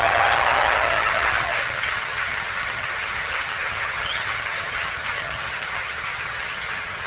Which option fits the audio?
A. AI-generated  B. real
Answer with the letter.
A